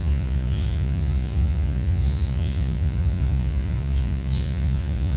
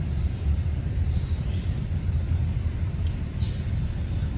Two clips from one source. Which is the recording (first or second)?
second